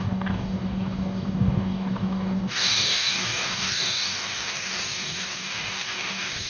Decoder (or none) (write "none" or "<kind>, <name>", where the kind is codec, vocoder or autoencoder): codec, DAC